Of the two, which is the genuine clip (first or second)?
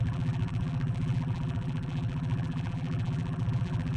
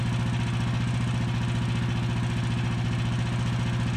second